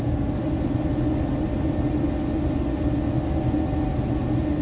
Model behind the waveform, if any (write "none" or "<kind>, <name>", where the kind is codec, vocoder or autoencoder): none